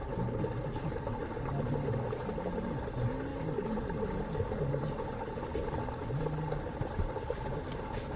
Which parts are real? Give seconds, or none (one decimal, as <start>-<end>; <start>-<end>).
0.0-8.2